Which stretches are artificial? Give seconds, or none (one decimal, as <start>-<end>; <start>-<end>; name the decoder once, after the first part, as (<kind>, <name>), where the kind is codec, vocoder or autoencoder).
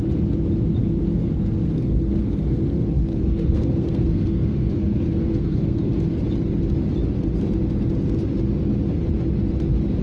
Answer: 0.8-5.9 (codec, SNAC)